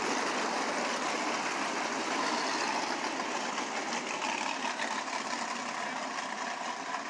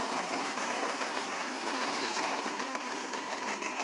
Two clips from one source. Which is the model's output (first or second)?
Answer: second